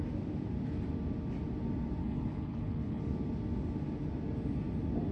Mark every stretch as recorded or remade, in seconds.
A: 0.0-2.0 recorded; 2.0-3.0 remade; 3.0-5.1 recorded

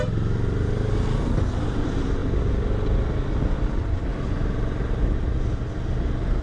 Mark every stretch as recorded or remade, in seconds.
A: 0.0-6.4 recorded

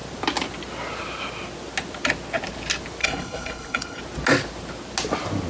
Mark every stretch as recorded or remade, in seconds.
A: 0.0-3.0 recorded; 3.0-4.0 remade; 4.0-5.5 recorded